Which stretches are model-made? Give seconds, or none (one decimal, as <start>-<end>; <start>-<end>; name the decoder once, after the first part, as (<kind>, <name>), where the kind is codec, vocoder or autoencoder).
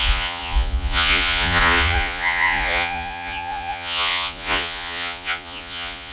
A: 0.0-6.1 (vocoder, Vocos)